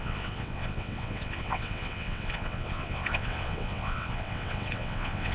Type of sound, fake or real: fake